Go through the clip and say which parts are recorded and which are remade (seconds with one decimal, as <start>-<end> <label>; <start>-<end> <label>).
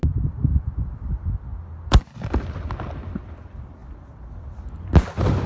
0.0-5.5 recorded